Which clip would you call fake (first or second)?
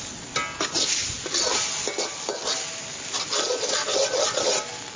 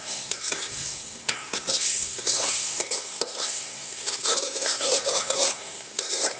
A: second